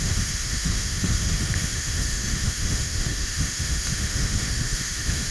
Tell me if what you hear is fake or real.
fake